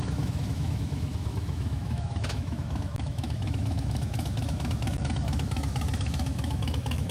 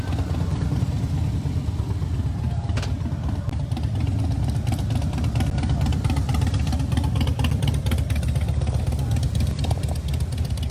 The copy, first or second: first